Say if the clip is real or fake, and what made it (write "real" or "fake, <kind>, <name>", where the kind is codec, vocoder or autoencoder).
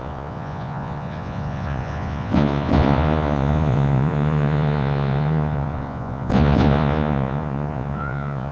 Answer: fake, vocoder, Vocos